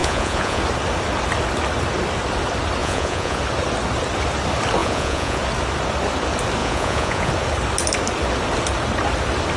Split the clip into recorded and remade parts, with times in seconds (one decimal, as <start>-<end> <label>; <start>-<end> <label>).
0.0-0.6 remade; 0.6-2.8 recorded; 2.8-3.4 remade; 3.4-4.8 recorded; 4.8-5.4 remade; 5.4-6.6 recorded; 6.6-7.3 remade; 7.3-9.6 recorded